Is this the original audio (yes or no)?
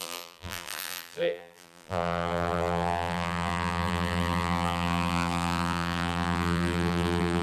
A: no